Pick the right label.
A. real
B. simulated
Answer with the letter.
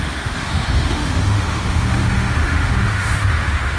B